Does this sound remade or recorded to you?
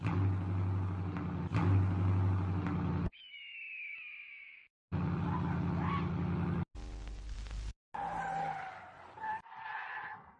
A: recorded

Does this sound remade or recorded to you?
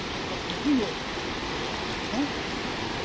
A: recorded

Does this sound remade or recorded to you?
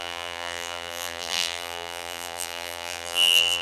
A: remade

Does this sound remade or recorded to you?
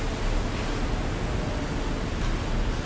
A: recorded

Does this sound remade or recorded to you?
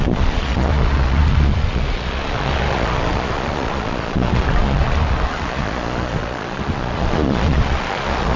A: remade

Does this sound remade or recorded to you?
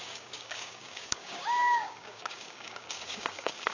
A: remade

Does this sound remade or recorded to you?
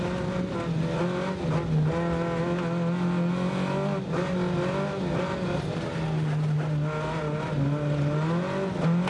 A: recorded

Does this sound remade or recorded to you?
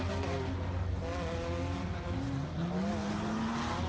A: recorded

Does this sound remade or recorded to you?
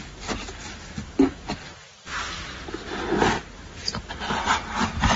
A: recorded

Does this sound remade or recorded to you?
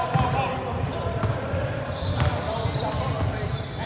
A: recorded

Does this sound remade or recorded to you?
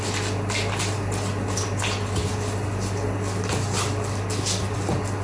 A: recorded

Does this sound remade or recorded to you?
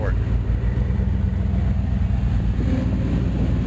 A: recorded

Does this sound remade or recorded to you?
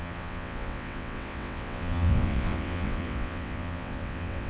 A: remade